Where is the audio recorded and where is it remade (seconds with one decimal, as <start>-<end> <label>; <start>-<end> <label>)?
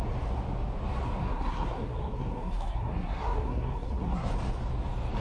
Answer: 0.0-1.2 recorded; 1.2-4.3 remade; 4.3-5.2 recorded